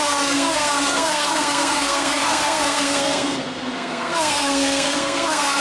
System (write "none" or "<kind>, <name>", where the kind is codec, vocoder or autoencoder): codec, SNAC